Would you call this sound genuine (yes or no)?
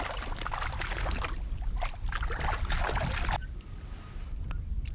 yes